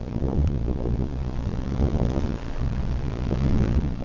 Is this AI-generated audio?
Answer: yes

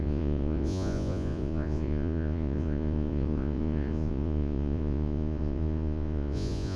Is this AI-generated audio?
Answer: yes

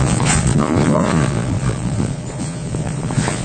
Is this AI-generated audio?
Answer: yes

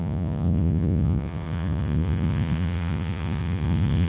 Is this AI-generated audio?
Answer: yes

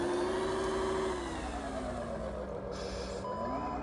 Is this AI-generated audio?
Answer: no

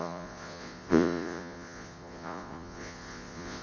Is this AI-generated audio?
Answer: yes